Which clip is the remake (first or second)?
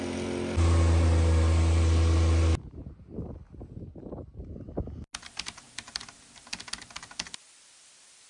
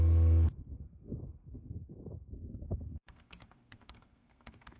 second